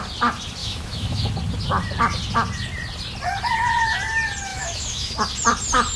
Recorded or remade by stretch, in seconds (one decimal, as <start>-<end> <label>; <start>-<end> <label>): 0.0-0.6 recorded; 0.6-1.3 remade; 1.3-4.5 recorded; 4.5-5.1 remade; 5.1-6.0 recorded

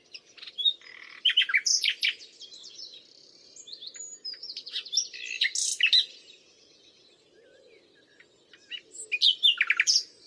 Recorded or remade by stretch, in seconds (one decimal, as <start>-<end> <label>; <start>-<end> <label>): 0.0-10.3 recorded